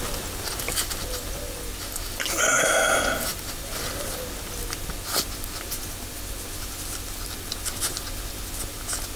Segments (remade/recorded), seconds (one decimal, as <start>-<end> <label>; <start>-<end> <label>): 0.0-9.2 recorded